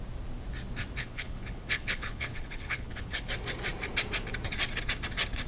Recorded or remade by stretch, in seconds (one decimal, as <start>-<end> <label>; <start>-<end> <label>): 0.0-1.0 recorded; 1.0-3.2 remade; 3.2-5.5 recorded